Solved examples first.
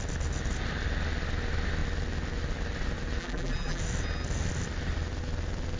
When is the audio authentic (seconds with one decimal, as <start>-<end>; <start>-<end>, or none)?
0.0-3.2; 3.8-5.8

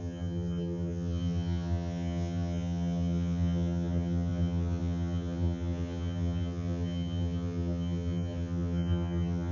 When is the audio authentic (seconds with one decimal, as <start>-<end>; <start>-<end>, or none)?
none

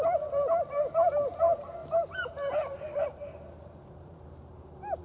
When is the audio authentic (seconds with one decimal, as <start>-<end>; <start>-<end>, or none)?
0.0-1.8

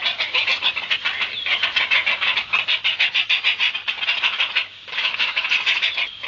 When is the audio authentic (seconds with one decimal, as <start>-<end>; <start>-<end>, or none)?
0.0-4.7; 5.6-6.3